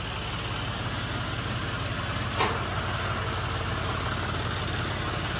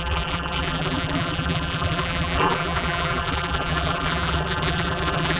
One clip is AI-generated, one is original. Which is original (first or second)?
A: first